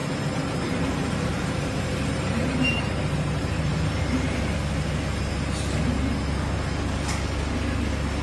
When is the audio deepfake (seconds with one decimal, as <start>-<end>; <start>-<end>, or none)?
0.0-4.4